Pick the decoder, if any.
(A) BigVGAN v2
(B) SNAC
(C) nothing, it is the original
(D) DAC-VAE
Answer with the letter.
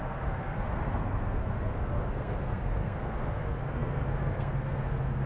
B